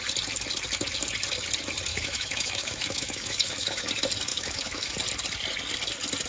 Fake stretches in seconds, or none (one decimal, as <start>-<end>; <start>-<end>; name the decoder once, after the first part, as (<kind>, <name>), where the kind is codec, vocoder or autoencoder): 1.9-3.9 (autoencoder, DAC-VAE); 4.3-4.9